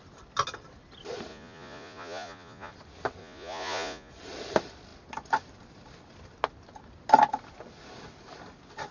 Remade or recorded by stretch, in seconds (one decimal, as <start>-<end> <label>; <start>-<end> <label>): 0.0-1.3 recorded; 1.3-2.7 remade; 2.7-3.2 recorded; 3.2-4.1 remade; 4.1-8.9 recorded